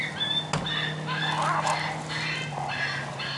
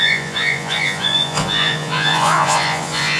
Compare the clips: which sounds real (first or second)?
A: first